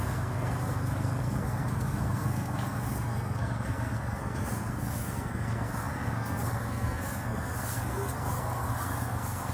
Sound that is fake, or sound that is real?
fake